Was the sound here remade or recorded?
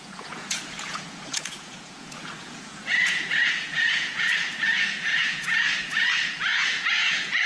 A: remade